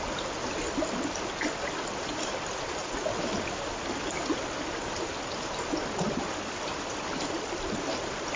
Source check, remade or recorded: recorded